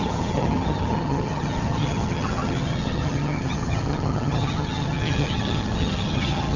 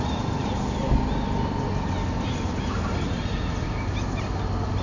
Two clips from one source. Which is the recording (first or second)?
second